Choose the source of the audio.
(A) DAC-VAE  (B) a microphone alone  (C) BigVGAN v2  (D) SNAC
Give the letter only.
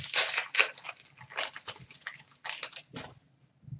B